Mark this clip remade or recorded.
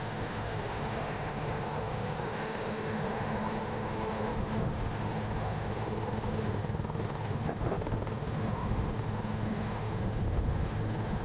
remade